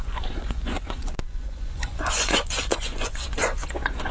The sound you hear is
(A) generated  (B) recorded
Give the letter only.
A